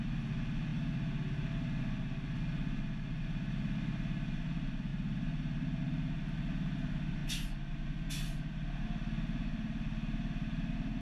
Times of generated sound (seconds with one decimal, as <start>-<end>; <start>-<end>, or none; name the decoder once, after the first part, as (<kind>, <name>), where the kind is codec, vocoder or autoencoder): none